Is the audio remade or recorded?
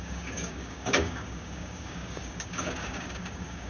remade